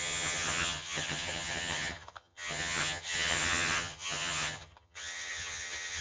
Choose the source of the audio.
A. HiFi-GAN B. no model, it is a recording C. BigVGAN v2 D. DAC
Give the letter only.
A